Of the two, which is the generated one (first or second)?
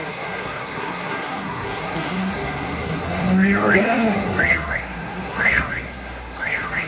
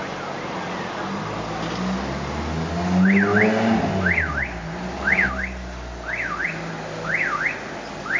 first